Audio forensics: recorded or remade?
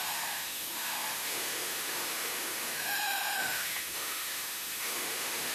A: remade